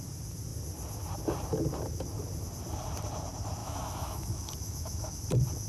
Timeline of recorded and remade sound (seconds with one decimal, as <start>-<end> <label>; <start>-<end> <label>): 0.0-3.6 recorded; 3.6-5.2 remade; 5.2-5.7 recorded